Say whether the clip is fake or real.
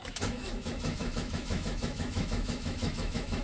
fake